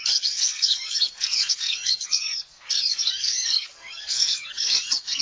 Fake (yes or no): yes